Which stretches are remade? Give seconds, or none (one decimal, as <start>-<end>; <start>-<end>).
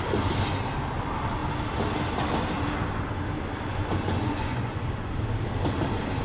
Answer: 3.7-5.1